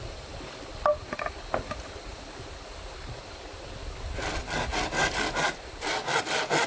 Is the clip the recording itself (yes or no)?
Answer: yes